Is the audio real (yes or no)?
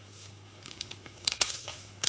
no